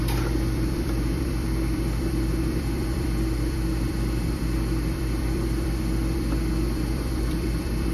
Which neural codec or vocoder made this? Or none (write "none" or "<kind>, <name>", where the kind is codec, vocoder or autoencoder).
vocoder, BigVGAN v2